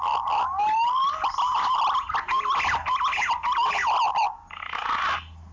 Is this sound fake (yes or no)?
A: no